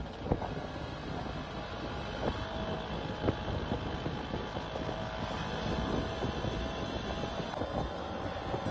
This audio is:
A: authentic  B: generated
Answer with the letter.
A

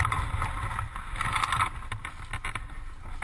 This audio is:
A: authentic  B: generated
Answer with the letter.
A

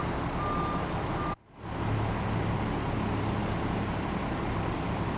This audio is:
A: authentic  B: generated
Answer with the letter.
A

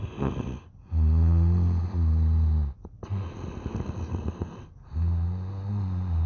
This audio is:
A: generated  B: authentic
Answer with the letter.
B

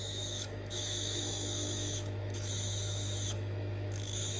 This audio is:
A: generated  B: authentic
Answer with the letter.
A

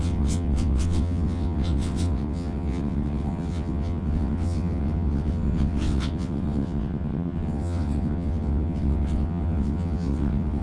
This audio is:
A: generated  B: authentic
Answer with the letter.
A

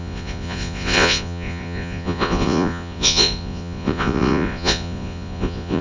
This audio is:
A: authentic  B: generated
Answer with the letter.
B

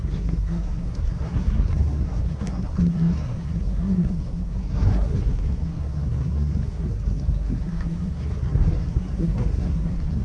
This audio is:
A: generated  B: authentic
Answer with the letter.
A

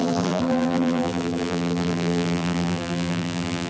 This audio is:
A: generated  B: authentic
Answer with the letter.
A